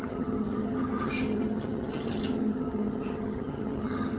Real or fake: fake